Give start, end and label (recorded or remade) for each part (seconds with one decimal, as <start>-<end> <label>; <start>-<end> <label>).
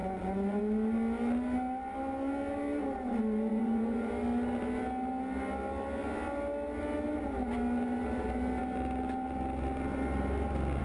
0.0-0.6 remade; 0.6-3.5 recorded; 3.5-4.1 remade; 4.1-10.8 recorded